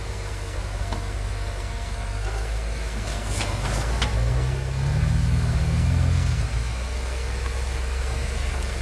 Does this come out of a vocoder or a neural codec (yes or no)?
yes